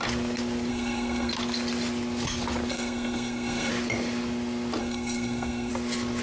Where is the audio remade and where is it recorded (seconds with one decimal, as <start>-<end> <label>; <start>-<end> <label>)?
0.0-0.7 recorded; 0.7-1.3 remade; 1.3-2.7 recorded; 2.7-3.7 remade; 3.7-4.8 recorded; 4.8-5.7 remade; 5.7-6.2 recorded